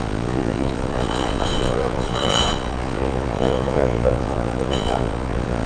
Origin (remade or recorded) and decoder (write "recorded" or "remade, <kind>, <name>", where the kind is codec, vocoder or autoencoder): remade, vocoder, Vocos